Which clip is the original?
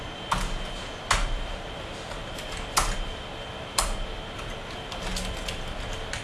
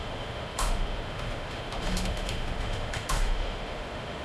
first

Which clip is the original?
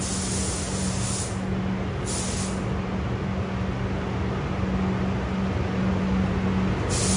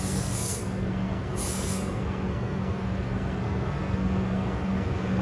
first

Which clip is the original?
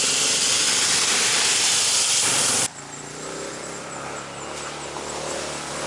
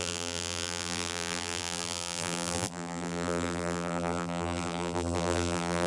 first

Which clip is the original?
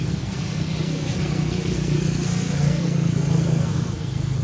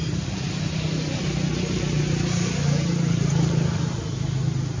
second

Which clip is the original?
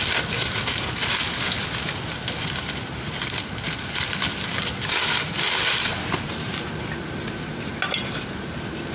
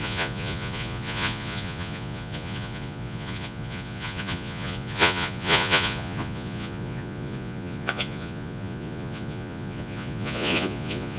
first